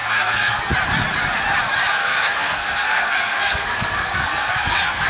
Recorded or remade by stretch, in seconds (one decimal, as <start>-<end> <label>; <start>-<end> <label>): 0.0-0.7 remade; 0.7-1.9 recorded; 1.9-5.1 remade